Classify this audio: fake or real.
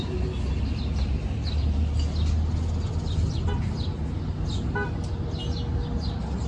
real